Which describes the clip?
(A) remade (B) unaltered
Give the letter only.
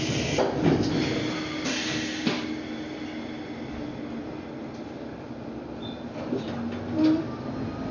B